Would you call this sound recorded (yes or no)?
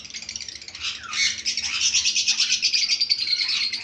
yes